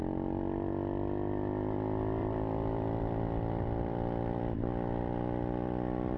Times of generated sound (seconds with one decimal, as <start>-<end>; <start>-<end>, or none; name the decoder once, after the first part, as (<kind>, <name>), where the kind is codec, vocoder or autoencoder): 2.2-6.2 (vocoder, BigVGAN v2)